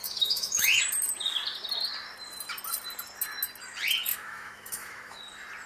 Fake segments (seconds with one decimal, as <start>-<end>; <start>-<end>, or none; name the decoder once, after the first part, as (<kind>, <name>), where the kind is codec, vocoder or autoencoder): 0.0-0.8 (autoencoder, DAC-VAE); 4.1-5.2